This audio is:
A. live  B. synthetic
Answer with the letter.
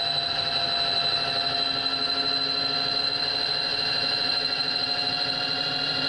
A